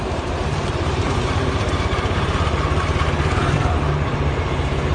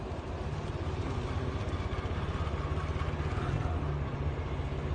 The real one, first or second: second